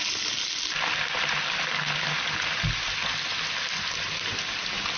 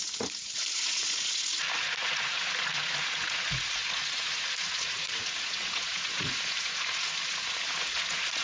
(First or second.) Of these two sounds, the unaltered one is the first